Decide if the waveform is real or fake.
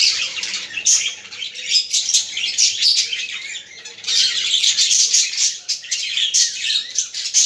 fake